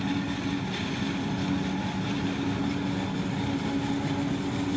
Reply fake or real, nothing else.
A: real